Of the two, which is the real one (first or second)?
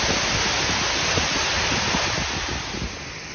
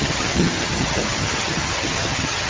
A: first